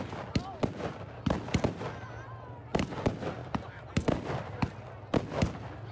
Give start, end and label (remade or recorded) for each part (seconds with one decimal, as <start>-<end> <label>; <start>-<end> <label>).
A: 0.0-3.4 recorded; 3.4-3.9 remade; 3.9-5.9 recorded